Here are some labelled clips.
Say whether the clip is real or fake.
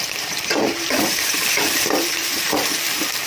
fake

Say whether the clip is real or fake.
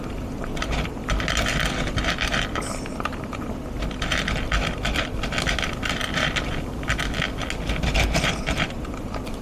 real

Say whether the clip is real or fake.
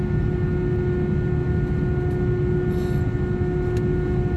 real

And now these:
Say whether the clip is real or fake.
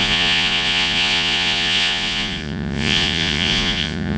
fake